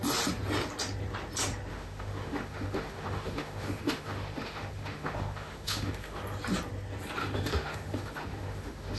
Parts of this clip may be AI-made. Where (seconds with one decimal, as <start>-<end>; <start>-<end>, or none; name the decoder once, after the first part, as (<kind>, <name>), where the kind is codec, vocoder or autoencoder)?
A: 1.7-6.2 (autoencoder, DAC-VAE); 7.2-9.0